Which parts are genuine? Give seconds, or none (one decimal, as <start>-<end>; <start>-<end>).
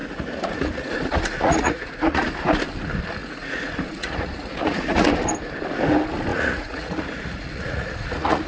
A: 2.3-3.2; 5.1-6.3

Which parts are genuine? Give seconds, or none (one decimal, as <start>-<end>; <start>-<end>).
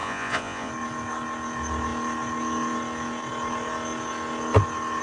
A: 0.7-5.0